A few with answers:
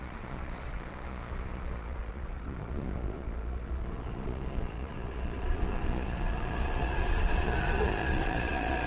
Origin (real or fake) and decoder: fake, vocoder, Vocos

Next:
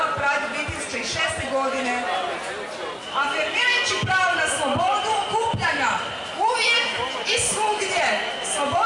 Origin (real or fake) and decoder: real